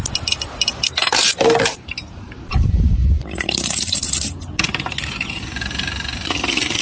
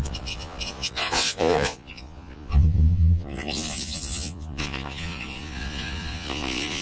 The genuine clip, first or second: first